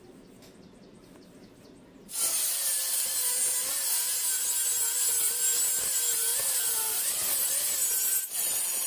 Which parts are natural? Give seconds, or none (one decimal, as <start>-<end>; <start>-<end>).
0.0-8.9